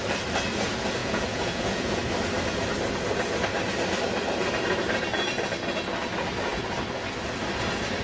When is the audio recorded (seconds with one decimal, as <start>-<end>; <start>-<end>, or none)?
0.0-1.0; 2.0-8.0